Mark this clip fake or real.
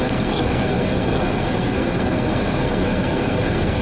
fake